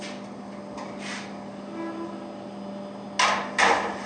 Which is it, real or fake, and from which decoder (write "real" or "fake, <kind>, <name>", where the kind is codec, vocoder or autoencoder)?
real